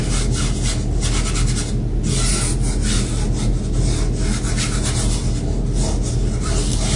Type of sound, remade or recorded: recorded